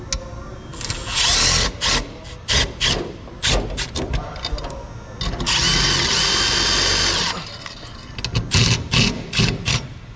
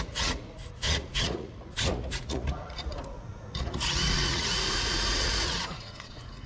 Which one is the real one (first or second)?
first